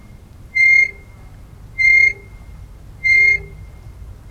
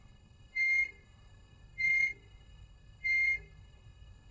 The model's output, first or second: second